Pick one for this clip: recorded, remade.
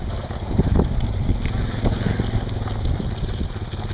recorded